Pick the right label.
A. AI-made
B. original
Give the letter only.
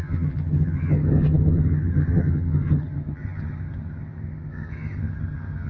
A